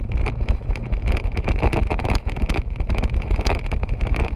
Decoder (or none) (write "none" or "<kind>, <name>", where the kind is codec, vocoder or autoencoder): autoencoder, DAC-VAE